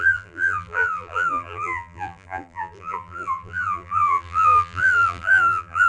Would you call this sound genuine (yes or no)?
no